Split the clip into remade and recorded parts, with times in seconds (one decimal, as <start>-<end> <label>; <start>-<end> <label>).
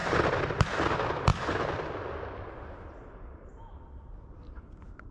0.0-0.6 remade; 0.6-5.1 recorded